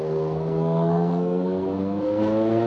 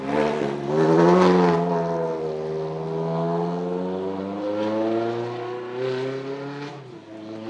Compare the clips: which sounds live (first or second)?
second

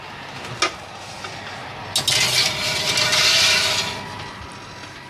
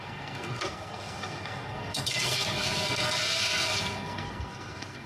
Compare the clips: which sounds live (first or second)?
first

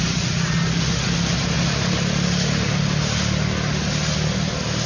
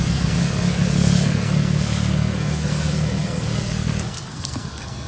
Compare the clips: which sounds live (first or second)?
first